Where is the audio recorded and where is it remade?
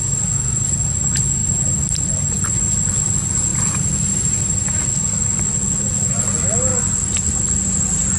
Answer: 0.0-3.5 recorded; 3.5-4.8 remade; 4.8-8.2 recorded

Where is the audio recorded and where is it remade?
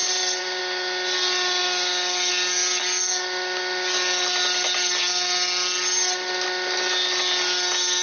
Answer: 0.0-0.6 remade; 0.6-8.0 recorded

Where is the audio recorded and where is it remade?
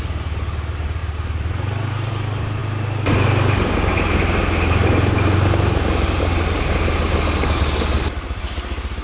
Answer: 0.0-1.0 recorded; 1.0-2.1 remade; 2.1-9.0 recorded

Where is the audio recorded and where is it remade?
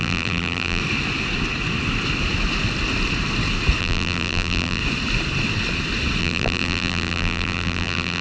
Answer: 0.0-0.8 remade; 0.8-3.8 recorded; 3.8-4.8 remade; 4.8-6.2 recorded; 6.2-8.2 remade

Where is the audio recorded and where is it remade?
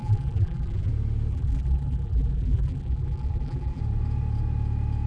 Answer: 0.0-0.9 remade; 0.9-1.3 recorded; 1.3-3.8 remade; 3.8-5.1 recorded